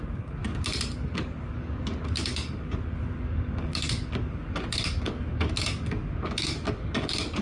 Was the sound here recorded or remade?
remade